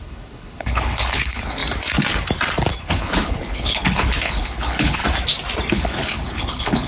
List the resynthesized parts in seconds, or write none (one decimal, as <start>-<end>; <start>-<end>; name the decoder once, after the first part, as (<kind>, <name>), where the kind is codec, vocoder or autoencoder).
0.0-1.6 (codec, HILCodec); 2.8-5.0; 5.7-6.9